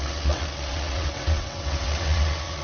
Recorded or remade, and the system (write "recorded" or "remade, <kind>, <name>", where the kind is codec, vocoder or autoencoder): remade, vocoder, WaveNeXt